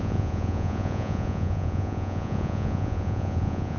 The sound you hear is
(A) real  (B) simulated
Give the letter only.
B